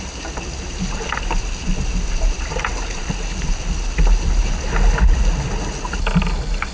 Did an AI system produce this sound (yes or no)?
no